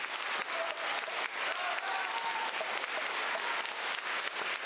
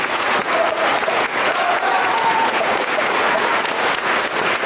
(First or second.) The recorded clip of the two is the first